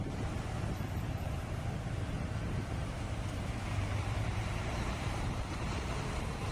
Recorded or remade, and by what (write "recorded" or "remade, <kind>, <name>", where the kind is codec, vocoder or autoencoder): remade, vocoder, BigVGAN v2